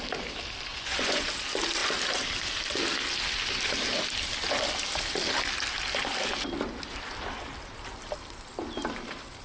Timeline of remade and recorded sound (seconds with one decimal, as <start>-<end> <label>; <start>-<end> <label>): 0.0-0.7 recorded; 0.7-1.3 remade; 1.3-9.4 recorded